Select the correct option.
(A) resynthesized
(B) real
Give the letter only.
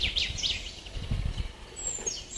B